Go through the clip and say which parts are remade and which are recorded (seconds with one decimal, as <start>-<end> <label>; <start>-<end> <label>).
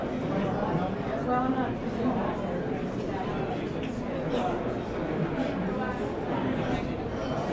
0.0-7.5 recorded